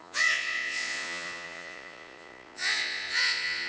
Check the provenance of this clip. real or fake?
fake